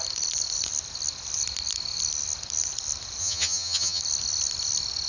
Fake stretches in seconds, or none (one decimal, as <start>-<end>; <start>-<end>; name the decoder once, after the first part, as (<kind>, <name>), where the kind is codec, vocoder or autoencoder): 3.2-4.0 (vocoder, HiFi-GAN)